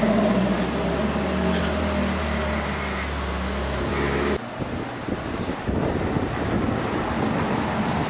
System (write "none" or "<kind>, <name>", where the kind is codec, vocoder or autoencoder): none